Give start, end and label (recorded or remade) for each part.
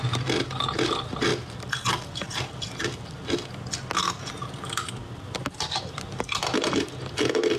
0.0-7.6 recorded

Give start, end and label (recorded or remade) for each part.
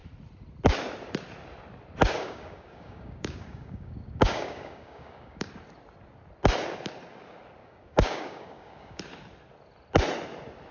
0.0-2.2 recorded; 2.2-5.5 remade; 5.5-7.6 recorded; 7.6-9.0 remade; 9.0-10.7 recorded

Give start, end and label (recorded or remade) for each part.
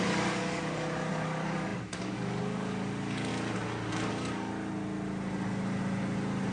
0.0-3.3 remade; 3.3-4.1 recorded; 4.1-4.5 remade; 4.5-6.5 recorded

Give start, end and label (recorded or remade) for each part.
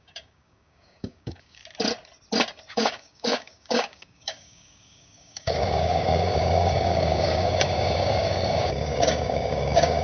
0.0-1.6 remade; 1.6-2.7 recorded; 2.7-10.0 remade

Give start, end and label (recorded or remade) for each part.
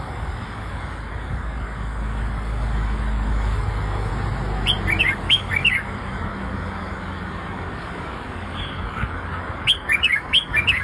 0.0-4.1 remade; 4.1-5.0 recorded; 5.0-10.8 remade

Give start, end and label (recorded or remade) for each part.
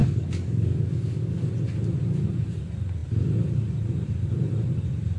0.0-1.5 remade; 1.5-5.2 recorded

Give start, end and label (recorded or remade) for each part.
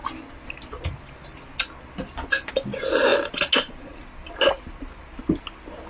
0.0-5.9 recorded